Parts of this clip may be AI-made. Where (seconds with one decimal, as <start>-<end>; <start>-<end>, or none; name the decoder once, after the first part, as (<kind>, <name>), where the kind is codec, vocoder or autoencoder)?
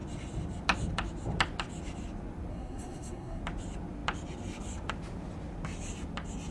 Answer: 2.5-3.4 (codec, SNAC)